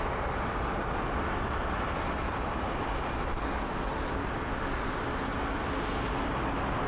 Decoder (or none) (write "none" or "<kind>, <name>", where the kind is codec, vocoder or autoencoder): none